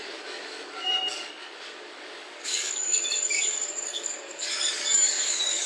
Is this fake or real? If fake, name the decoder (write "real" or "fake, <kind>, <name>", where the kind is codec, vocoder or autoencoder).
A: fake, codec, DAC